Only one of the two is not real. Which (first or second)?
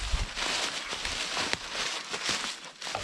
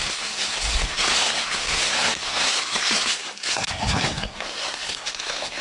second